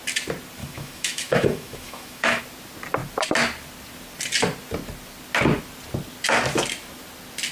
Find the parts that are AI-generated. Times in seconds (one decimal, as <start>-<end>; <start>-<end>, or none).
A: 0.6-2.4